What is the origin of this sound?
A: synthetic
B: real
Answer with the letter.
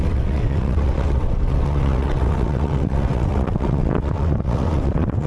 A